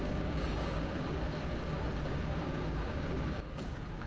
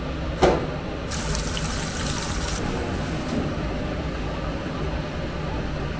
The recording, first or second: second